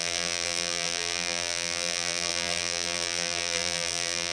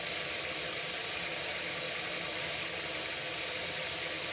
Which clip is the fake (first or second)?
first